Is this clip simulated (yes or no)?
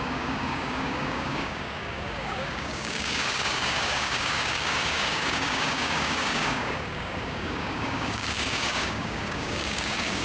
yes